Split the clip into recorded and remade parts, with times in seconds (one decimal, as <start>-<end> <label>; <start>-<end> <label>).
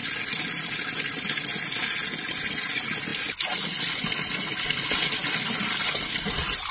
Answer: 0.0-6.7 recorded